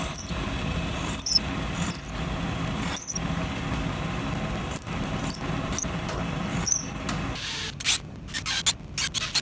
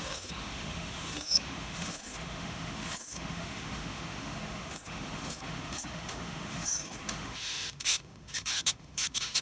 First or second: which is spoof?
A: second